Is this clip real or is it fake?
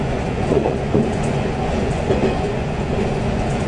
fake